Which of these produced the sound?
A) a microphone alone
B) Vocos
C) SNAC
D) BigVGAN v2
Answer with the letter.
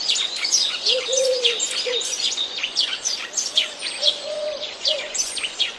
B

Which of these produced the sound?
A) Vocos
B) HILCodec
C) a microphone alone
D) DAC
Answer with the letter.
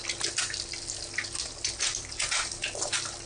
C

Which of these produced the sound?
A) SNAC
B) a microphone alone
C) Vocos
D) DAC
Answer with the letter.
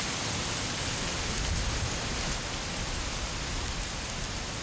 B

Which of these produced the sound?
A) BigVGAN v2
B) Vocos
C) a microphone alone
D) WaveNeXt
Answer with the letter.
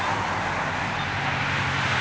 C